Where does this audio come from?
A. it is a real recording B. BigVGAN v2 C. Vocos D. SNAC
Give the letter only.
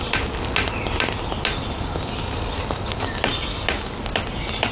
A